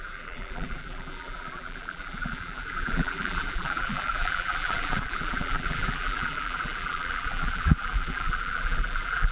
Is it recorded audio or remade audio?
remade